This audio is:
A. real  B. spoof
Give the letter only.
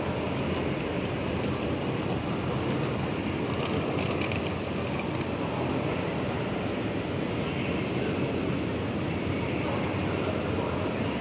A